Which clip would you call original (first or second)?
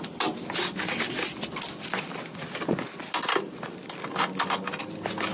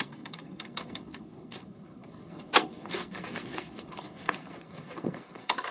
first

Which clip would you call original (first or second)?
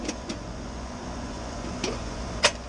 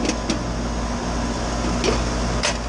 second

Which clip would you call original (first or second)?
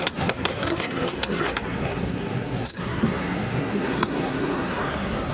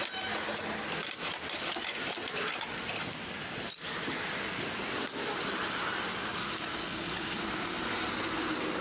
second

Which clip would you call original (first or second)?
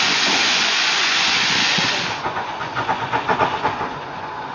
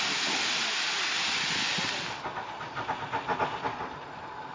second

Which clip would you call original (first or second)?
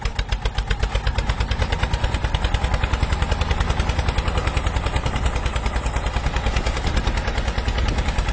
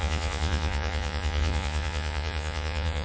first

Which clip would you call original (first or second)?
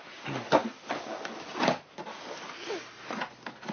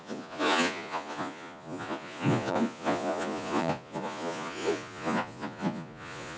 first